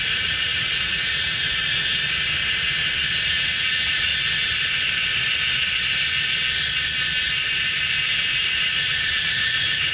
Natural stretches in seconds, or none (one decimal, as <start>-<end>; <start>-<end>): 1.6-3.3; 4.1-8.1